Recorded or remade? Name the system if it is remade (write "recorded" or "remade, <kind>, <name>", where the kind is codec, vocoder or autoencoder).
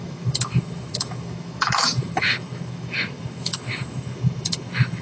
remade, autoencoder, DAC-VAE